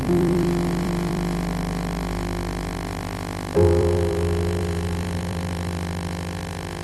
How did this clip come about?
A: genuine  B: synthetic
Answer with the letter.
B